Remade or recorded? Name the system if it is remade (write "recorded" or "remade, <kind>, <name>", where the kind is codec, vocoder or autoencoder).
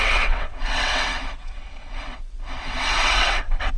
remade, vocoder, WaveNeXt